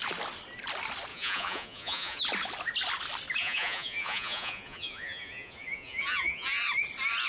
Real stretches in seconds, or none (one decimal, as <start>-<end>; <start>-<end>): 0.0-1.1; 2.2-3.4; 6.6-7.3